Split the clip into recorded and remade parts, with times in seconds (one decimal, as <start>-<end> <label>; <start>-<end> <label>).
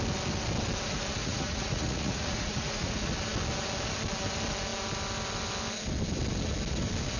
0.0-1.2 recorded; 1.2-3.1 remade; 3.1-7.2 recorded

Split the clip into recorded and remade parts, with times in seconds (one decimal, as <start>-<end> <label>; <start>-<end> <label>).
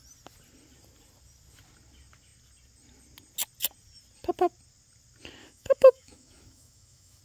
0.0-5.4 recorded; 5.4-7.2 remade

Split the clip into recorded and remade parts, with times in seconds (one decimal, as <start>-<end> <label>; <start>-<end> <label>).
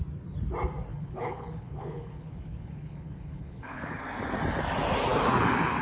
0.0-0.9 recorded; 0.9-4.0 remade; 4.0-5.8 recorded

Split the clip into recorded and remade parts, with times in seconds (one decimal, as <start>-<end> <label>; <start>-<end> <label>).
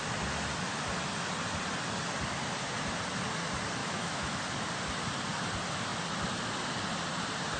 0.0-3.8 recorded; 3.8-4.4 remade; 4.4-7.6 recorded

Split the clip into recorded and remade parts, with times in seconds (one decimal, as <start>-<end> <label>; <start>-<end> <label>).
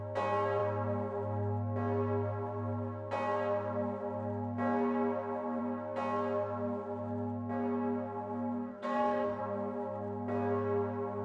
0.0-8.7 recorded; 8.7-9.4 remade; 9.4-11.2 recorded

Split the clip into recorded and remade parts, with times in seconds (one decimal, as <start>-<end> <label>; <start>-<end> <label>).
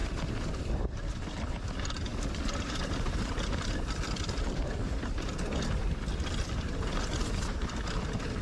0.0-8.4 remade